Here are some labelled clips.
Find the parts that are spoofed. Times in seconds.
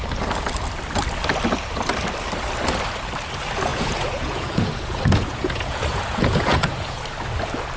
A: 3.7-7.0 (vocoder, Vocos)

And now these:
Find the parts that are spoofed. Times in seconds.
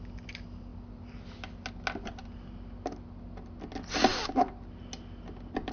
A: none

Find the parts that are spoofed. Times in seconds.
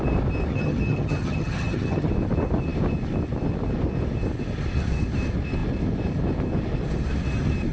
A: 0.5-2.1 (vocoder, HiFi-GAN)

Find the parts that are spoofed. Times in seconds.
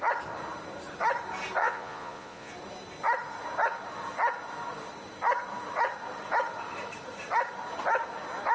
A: 1.6-2.5 (vocoder, Vocos)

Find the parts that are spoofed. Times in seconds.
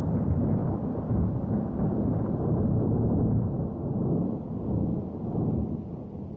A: 0.6-1.3 (vocoder, BigVGAN v2); 1.9-5.7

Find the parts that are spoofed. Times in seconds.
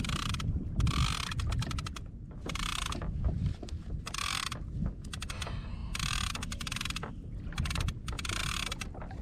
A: none